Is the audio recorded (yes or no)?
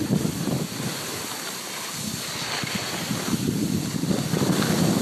yes